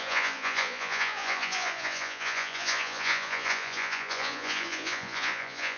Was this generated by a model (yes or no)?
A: yes